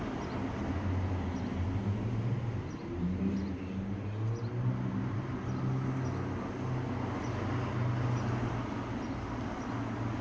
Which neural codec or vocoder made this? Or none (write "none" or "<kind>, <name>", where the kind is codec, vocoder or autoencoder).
none